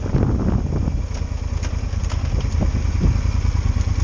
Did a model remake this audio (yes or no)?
no